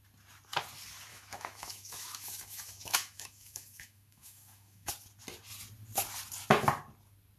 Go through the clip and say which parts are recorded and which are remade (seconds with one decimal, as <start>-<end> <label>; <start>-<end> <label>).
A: 0.0-1.1 recorded; 1.1-4.9 remade; 4.9-7.4 recorded